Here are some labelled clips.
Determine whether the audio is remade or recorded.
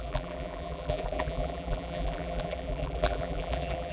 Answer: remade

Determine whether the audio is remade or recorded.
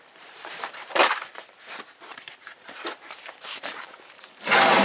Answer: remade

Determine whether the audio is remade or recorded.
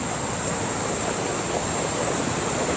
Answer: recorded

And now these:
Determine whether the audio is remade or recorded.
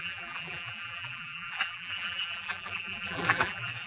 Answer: remade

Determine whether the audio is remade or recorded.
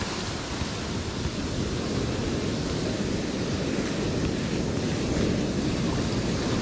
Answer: recorded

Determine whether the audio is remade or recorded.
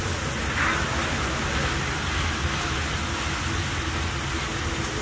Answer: recorded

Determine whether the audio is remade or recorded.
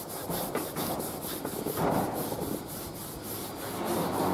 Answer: recorded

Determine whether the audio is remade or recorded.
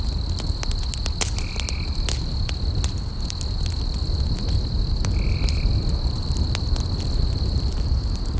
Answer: recorded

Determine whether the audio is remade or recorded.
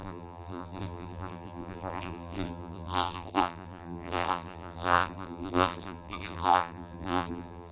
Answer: remade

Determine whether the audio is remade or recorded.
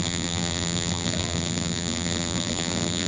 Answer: remade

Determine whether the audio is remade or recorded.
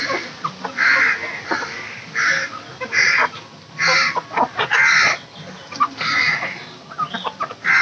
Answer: recorded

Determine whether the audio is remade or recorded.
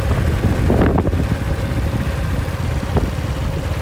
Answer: recorded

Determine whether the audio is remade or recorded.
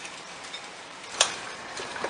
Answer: remade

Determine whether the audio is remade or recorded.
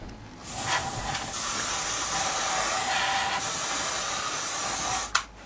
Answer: recorded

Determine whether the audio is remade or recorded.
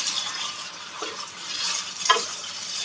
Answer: remade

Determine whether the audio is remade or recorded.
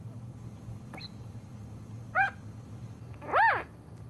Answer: remade